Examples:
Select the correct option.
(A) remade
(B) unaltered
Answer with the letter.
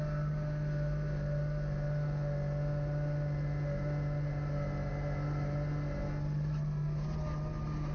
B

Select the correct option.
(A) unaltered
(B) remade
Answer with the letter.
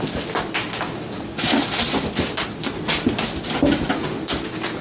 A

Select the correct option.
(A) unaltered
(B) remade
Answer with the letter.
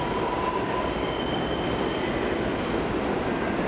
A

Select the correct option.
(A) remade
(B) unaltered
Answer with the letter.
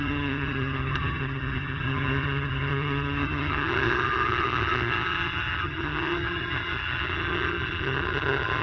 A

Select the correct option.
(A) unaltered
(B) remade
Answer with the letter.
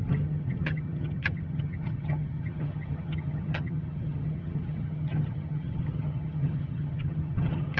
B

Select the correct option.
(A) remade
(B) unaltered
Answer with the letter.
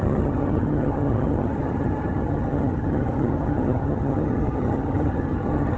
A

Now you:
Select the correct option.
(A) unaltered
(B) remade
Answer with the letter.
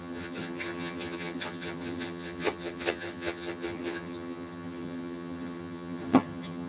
B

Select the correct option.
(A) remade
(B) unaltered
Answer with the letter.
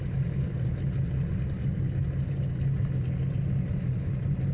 B